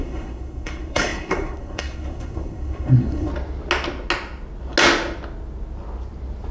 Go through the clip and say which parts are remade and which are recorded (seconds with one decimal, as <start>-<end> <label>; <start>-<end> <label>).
0.0-3.3 remade; 3.3-6.5 recorded